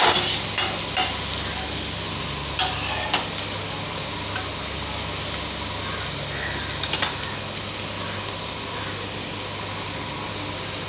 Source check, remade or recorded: recorded